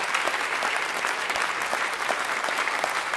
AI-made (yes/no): yes